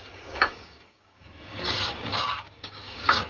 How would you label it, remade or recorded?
remade